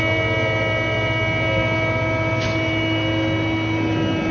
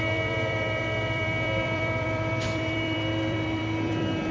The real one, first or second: first